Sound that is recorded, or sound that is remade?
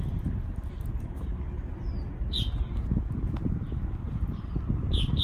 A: recorded